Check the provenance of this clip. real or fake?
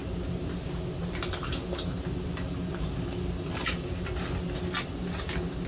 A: real